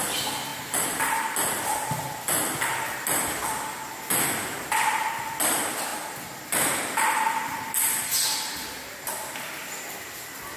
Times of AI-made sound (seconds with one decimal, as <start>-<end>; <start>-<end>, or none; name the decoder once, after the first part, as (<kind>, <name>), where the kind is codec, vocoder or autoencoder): none